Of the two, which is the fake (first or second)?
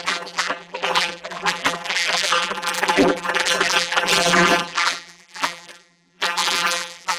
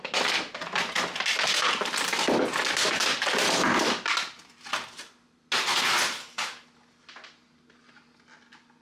first